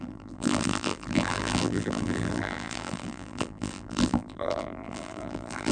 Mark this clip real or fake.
fake